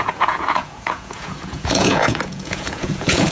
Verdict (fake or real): fake